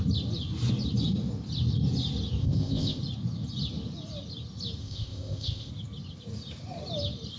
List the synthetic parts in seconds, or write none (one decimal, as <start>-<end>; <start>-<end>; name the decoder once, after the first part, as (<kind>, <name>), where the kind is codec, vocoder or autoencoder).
2.4-3.0 (codec, ZipCodec); 4.8-5.7